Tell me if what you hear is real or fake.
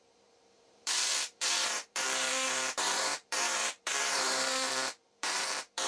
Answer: fake